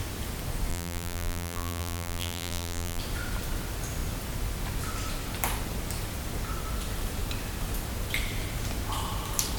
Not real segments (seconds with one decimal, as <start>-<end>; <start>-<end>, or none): 0.7-3.0